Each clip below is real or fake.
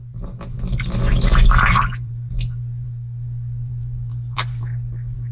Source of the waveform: real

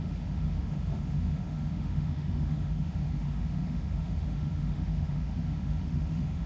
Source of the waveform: fake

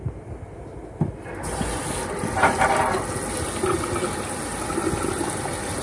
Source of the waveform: real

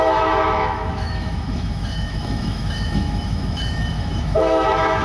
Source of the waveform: fake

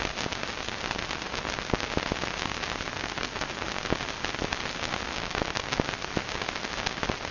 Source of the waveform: real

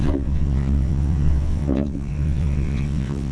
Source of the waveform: fake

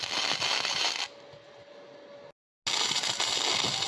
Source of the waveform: real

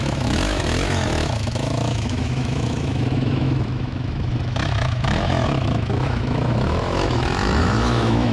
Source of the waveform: fake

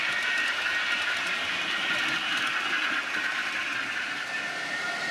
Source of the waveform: real